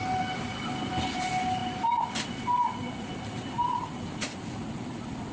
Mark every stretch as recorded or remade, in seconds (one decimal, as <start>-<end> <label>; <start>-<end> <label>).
0.0-5.3 recorded